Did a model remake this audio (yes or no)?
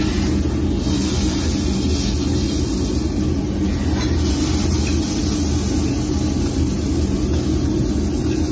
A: no